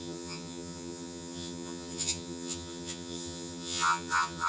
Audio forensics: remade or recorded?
remade